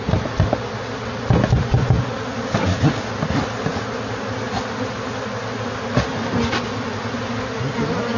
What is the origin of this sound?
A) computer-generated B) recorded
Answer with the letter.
B